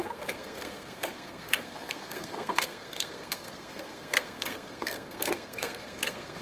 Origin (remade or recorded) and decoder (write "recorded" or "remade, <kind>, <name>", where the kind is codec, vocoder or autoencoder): remade, codec, SNAC